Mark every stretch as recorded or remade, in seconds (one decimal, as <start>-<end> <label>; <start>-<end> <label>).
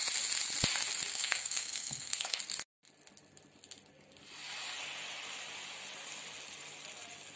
0.0-1.1 recorded; 1.1-2.4 remade; 2.4-7.4 recorded